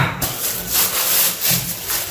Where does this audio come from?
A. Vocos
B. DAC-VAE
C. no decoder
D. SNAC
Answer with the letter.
C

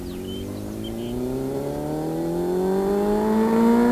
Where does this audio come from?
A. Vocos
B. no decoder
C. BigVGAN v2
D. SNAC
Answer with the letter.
B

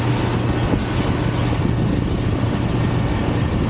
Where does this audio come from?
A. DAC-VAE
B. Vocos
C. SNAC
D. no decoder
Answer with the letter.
D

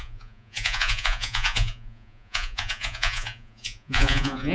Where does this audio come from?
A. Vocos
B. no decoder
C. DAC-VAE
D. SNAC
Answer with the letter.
A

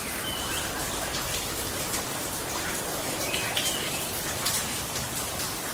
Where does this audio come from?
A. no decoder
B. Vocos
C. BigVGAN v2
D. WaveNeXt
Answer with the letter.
C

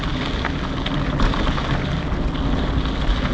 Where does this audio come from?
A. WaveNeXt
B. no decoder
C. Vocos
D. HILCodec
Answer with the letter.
B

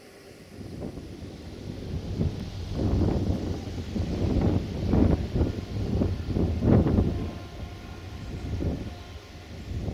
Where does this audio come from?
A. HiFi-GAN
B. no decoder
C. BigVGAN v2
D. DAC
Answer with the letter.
B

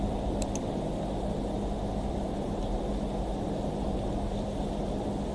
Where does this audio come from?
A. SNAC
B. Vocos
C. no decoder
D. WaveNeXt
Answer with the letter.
C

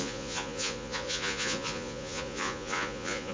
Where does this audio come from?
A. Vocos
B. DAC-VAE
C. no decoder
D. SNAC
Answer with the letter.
A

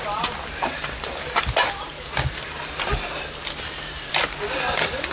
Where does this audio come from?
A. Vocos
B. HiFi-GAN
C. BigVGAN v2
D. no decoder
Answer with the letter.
D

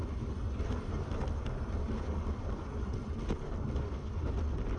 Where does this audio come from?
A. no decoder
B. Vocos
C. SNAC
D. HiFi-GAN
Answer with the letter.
A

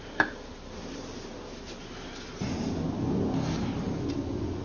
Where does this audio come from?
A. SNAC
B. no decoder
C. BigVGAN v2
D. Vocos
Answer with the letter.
B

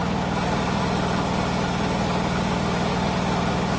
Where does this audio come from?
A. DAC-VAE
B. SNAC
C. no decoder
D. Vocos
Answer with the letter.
C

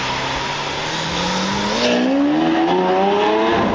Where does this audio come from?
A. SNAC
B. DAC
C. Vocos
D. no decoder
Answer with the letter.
D